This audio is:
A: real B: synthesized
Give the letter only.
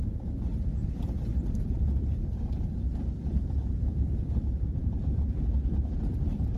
B